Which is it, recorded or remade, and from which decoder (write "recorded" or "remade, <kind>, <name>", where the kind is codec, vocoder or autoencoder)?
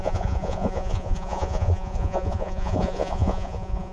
remade, vocoder, Vocos